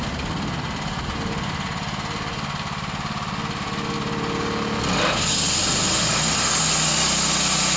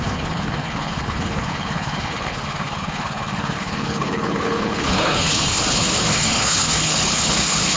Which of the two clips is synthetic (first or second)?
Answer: second